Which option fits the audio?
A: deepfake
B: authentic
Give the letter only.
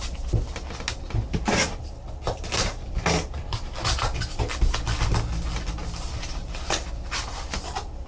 B